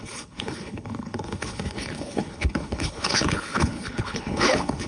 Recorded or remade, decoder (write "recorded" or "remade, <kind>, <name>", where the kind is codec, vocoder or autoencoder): remade, codec, HILCodec